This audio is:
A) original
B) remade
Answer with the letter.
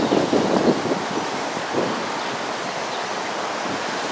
A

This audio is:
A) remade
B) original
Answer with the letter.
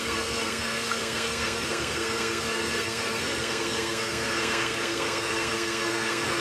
A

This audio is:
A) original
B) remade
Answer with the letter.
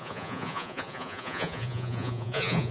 B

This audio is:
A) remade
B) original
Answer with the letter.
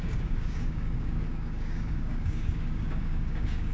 A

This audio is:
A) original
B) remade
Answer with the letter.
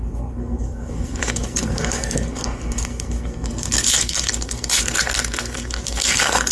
B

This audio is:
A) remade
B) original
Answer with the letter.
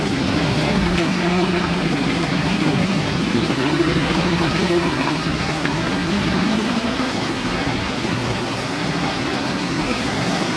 A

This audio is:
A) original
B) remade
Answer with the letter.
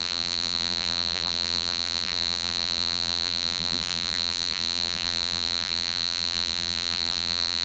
B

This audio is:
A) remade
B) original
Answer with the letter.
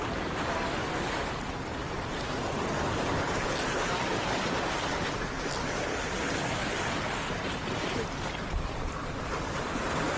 B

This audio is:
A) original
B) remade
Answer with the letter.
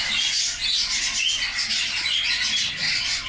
A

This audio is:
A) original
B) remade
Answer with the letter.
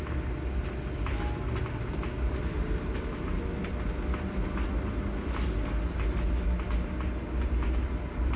A